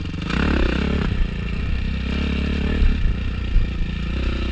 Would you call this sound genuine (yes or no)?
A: yes